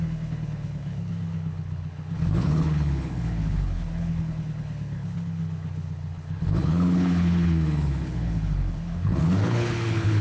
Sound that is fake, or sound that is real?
fake